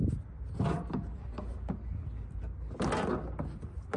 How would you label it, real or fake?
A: real